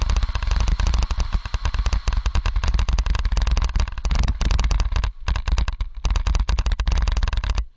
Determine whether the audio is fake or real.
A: real